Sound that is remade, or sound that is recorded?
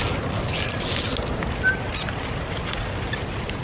recorded